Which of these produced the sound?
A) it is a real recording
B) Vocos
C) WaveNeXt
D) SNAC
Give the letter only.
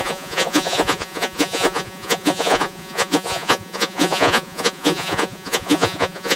B